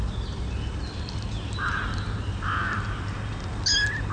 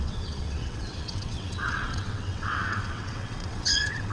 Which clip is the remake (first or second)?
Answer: second